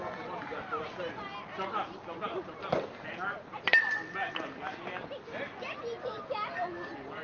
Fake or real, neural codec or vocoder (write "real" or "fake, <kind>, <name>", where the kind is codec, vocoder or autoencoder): real